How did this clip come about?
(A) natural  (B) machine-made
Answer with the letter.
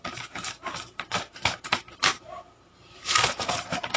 B